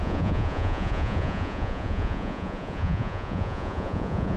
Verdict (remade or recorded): remade